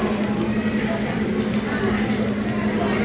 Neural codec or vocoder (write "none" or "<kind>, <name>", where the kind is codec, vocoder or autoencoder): none